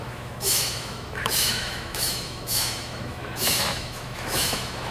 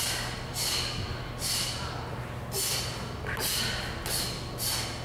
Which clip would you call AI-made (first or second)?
first